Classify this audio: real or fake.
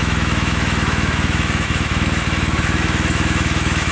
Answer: fake